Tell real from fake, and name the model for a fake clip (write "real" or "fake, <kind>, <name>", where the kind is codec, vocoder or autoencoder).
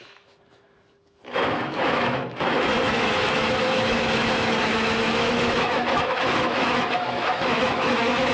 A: fake, autoencoder, DAC-VAE